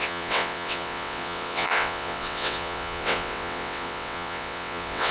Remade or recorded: remade